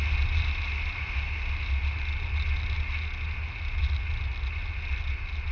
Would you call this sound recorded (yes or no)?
yes